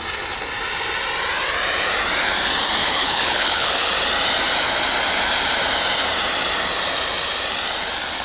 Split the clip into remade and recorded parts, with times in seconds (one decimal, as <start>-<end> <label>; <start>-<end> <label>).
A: 0.0-2.8 recorded; 2.8-3.9 remade; 3.9-8.2 recorded